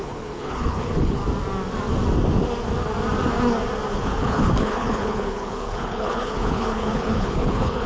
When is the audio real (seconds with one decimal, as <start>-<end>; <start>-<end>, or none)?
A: 1.2-3.9